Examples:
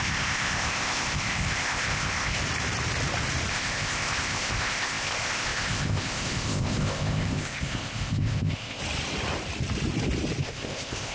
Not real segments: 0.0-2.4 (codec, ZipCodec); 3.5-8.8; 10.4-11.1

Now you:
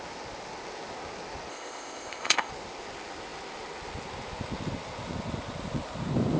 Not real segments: 1.5-2.5 (codec, ZipCodec)

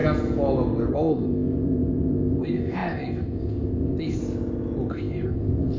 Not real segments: 0.9-4.2 (codec, ZipCodec); 4.9-5.8

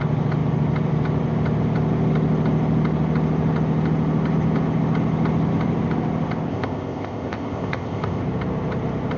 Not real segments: 6.5-8.2 (codec, ZipCodec)